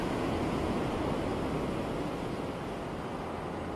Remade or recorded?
recorded